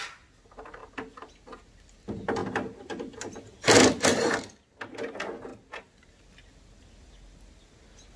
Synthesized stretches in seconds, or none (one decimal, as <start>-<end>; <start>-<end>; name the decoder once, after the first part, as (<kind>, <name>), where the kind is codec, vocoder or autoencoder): none